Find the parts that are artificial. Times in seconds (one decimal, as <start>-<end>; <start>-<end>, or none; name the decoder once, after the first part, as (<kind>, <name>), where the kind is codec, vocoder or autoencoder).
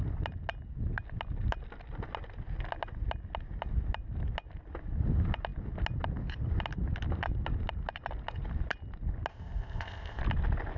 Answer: 9.3-10.2 (codec, ZipCodec)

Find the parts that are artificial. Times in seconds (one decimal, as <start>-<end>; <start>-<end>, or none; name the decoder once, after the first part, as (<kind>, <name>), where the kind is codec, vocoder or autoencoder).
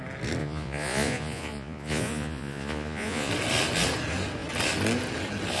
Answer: 0.4-3.3 (vocoder, Vocos)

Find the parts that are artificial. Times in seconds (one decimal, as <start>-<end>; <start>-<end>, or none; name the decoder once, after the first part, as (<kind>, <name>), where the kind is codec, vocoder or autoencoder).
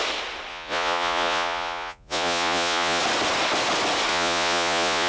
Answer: 0.5-3.0 (vocoder, Vocos); 4.1-5.1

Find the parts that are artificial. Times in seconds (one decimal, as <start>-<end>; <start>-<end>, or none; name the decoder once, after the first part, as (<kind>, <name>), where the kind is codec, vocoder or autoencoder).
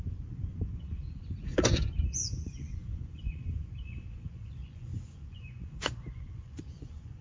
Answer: 0.0-7.2 (vocoder, Vocos)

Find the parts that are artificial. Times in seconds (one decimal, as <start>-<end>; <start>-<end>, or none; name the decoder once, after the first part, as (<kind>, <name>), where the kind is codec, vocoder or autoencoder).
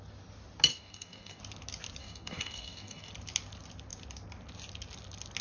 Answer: 0.7-1.4 (codec, DAC); 2.0-3.1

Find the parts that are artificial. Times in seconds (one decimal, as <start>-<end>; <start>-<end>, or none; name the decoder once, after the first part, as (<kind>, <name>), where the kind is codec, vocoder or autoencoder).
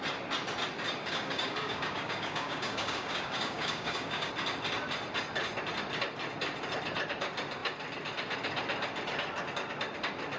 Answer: 1.0-4.3 (codec, DAC)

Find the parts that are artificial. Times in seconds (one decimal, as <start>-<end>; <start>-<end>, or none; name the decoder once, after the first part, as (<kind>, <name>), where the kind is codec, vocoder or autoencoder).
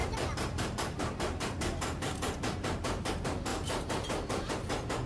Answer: 0.0-3.1 (vocoder, BigVGAN v2); 3.5-4.5